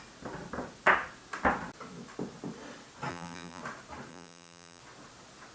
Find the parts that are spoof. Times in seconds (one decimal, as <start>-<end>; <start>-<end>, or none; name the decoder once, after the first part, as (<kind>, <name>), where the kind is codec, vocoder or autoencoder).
3.1-3.6 (vocoder, BigVGAN v2); 4.1-4.8